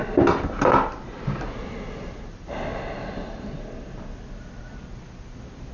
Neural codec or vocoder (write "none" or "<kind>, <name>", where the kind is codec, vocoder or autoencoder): none